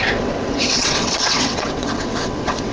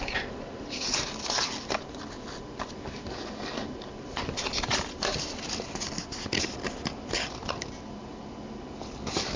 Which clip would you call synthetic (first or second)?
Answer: first